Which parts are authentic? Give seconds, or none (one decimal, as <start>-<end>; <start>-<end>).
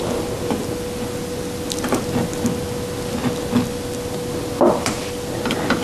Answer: 0.0-5.8